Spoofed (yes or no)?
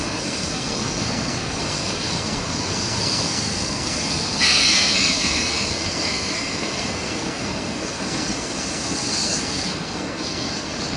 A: yes